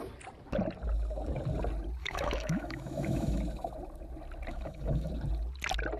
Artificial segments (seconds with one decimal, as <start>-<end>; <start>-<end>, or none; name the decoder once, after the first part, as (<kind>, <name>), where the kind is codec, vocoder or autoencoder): 2.0-3.4 (autoencoder, DAC-VAE); 4.5-5.1